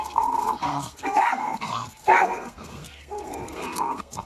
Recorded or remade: remade